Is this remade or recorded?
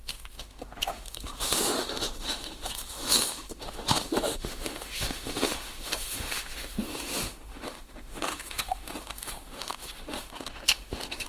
remade